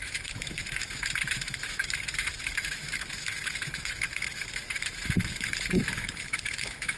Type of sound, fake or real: fake